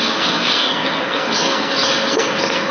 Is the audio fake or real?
fake